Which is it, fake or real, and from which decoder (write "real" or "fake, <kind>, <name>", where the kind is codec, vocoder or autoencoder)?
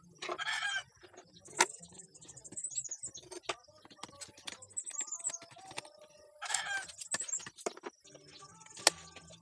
real